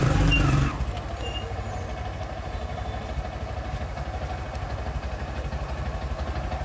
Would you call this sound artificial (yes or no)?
no